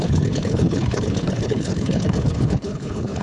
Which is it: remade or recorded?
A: remade